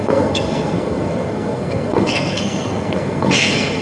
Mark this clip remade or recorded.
remade